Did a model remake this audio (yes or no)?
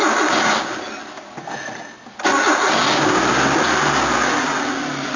no